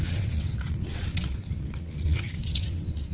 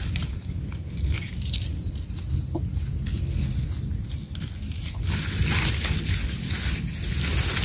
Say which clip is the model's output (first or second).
first